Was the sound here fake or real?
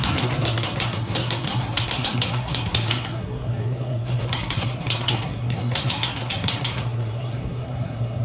fake